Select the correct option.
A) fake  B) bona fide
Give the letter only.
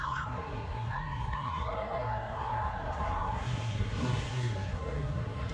A